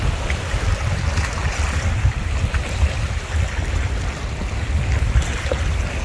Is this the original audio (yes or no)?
yes